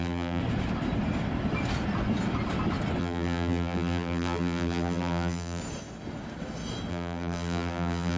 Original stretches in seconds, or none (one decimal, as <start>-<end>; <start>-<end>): 0.4-3.0; 5.6-6.9